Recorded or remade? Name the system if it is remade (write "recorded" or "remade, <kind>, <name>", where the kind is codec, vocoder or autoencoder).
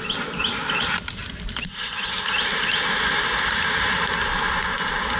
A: recorded